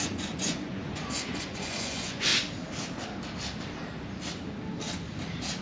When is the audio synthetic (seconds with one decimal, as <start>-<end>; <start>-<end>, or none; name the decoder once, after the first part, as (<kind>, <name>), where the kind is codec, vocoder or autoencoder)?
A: 0.0-2.3 (vocoder, Vocos)